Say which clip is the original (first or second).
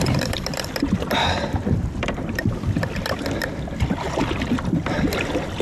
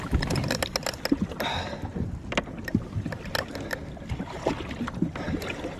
second